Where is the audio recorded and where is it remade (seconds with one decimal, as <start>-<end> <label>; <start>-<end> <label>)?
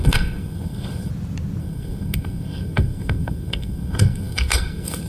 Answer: 0.0-1.1 remade; 1.1-1.6 recorded; 1.6-5.1 remade